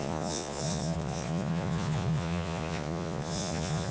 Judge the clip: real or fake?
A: fake